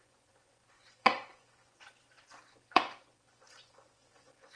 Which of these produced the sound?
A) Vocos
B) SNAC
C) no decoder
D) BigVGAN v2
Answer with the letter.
A